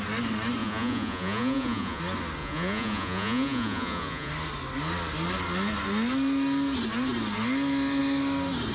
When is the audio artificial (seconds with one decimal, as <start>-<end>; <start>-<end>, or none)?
0.6-2.0; 2.4-4.3